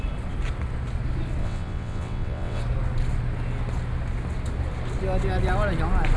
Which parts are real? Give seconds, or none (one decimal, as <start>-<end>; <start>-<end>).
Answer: 0.0-1.4; 2.6-6.2